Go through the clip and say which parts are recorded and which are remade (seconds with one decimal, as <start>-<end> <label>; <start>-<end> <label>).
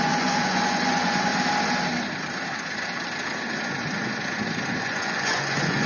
0.0-1.3 remade; 1.3-4.8 recorded; 4.8-5.9 remade